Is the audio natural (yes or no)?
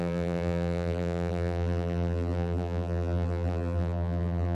no